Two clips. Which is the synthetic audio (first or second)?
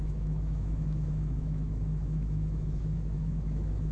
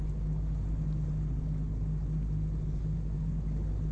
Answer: first